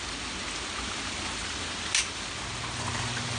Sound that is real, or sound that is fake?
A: real